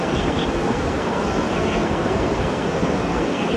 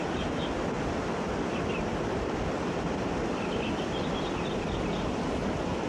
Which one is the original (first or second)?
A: second